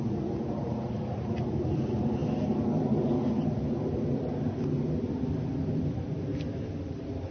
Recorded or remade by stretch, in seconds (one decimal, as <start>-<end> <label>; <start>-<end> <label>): 0.0-7.3 recorded